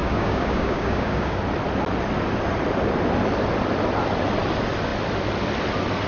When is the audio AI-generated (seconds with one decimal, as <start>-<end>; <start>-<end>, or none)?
0.0-1.4